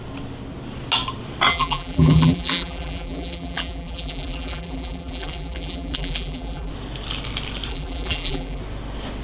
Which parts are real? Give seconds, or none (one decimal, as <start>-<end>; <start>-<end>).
0.0-1.5; 6.7-7.7; 8.6-9.2

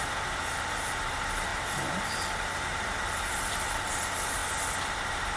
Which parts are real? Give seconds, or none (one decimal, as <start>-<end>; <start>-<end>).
4.4-5.0

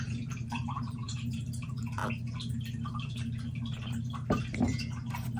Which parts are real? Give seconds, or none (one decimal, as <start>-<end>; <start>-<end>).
2.0-5.4

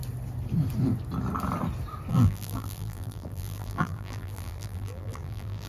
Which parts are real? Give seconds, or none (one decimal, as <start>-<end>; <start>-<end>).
0.0-2.1

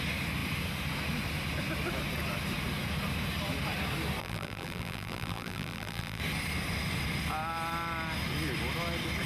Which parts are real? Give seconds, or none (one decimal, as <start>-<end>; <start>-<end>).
0.0-4.2; 6.2-9.3

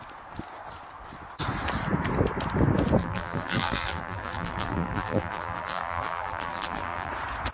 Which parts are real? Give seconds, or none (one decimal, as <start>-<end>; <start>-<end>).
0.0-3.0; 7.1-7.5

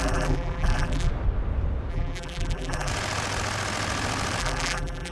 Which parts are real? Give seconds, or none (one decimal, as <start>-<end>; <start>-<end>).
1.1-1.9; 2.9-4.4